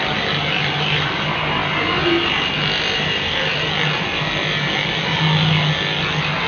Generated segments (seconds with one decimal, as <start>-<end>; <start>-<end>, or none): none